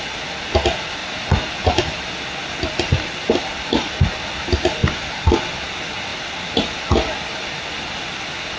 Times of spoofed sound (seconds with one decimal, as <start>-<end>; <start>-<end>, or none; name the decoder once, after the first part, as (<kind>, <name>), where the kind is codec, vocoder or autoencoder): 1.0-2.1 (vocoder, BigVGAN v2); 4.8-5.4